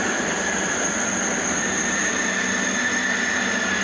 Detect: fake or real real